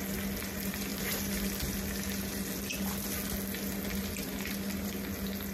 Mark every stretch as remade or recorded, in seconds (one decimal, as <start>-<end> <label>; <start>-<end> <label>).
0.0-0.9 recorded; 0.9-1.6 remade; 1.6-5.5 recorded